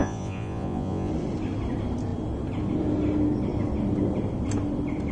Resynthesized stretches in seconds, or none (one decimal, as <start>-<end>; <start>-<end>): 0.0-1.1